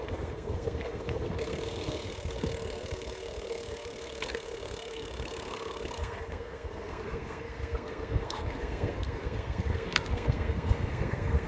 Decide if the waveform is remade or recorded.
remade